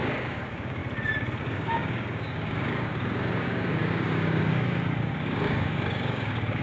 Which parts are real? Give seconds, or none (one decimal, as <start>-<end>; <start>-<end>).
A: 0.8-1.4